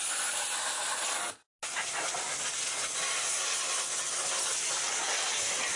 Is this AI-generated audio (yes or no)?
no